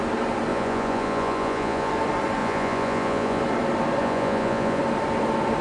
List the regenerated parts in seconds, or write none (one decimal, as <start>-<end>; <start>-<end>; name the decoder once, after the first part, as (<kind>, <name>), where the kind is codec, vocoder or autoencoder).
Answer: 0.5-1.9 (vocoder, Vocos); 2.4-3.4; 4.0-4.8